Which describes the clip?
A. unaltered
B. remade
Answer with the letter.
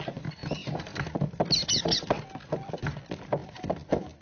A